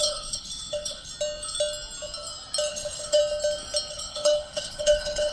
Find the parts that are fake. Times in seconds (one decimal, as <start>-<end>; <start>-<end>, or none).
0.0-1.1; 2.7-3.2; 3.9-5.3